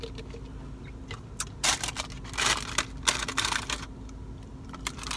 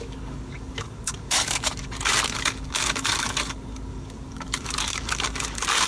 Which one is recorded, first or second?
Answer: first